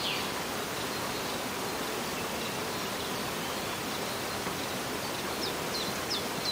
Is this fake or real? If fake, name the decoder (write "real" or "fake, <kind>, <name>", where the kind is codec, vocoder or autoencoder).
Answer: real